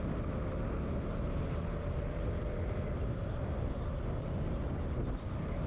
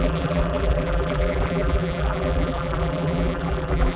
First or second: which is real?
first